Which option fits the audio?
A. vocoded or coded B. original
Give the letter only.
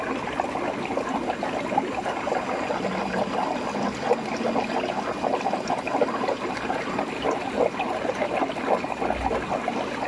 B